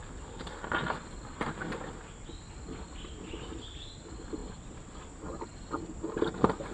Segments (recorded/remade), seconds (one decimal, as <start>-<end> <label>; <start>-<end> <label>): 0.0-6.7 recorded